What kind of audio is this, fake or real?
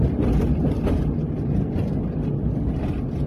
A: real